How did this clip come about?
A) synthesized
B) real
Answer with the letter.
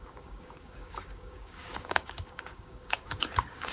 A